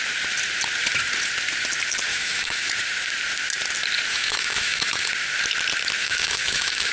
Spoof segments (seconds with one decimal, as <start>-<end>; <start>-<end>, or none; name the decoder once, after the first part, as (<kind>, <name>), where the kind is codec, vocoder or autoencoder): 2.1-2.7 (autoencoder, DAC-VAE); 4.1-5.1; 6.0-6.9